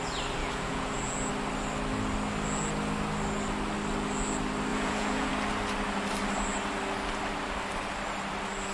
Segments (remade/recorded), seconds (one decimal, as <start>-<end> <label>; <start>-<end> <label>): 0.0-0.4 recorded; 0.4-1.3 remade; 1.3-4.7 recorded; 4.7-5.3 remade; 5.3-8.7 recorded